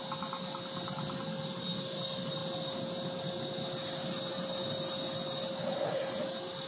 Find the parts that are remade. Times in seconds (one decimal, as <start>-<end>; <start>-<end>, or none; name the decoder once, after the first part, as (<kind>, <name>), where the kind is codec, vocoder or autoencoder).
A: none